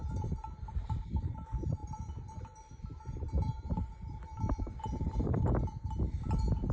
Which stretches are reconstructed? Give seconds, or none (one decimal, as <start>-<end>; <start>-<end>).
0.0-6.7